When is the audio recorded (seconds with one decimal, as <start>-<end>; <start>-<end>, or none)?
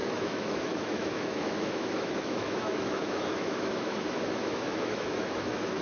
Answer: none